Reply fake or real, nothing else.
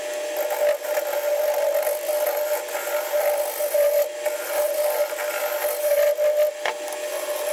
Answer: real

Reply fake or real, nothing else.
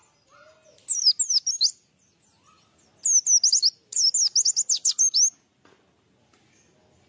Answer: real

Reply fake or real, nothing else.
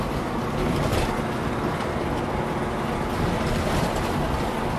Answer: real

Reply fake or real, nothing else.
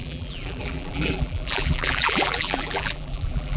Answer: fake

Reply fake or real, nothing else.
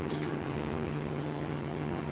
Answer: fake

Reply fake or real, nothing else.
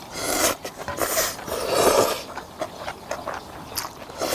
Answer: real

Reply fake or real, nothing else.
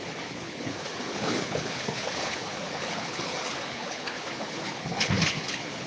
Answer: fake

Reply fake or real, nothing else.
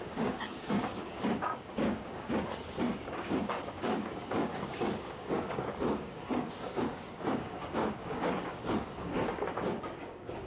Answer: fake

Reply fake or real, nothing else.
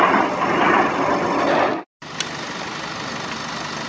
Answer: real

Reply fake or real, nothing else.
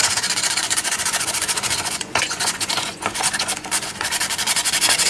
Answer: fake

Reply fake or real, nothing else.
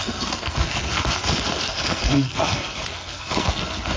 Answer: fake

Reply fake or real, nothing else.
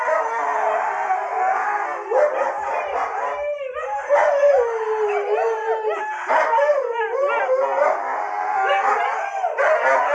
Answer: real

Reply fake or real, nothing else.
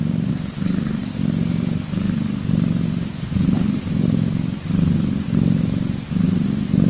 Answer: fake